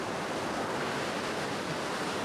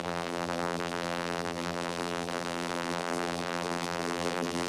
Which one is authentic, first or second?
first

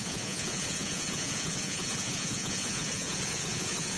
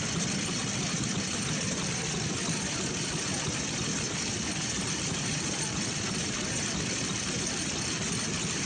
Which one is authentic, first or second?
second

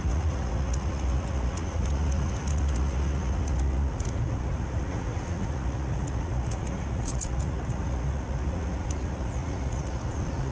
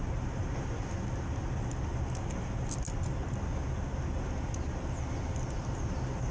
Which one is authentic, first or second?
second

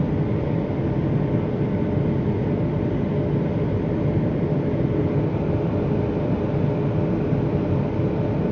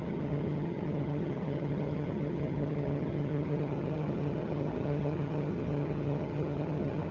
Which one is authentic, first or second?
first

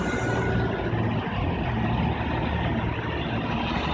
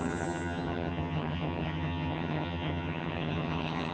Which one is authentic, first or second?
first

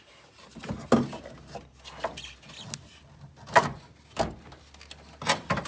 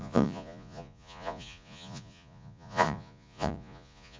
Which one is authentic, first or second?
first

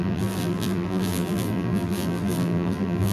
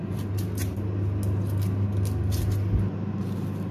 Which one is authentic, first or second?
second